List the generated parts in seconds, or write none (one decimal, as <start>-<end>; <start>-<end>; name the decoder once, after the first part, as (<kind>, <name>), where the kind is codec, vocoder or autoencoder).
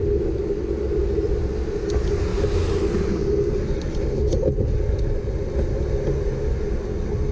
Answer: none